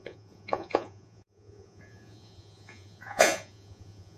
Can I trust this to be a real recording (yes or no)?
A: no